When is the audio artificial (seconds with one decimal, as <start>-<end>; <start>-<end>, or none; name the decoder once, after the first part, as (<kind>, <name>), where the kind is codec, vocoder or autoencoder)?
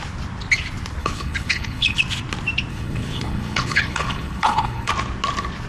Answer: 1.0-2.0 (codec, HILCodec); 2.7-4.9